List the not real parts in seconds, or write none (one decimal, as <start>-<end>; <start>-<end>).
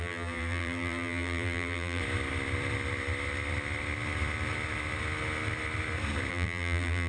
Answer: 0.0-2.0; 6.3-7.1